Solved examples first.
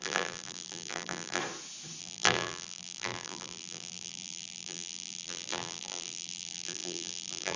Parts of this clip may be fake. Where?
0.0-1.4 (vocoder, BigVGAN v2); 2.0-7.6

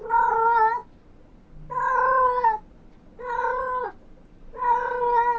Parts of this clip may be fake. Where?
none

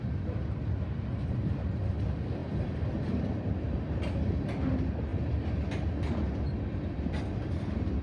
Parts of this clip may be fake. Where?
none

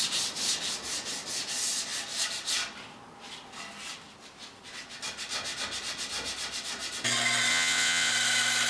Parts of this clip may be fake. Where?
7.5-8.1 (vocoder, WaveNeXt)

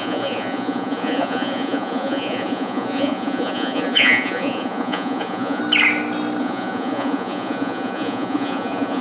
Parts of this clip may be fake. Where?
0.0-5.6 (vocoder, Vocos); 6.4-9.0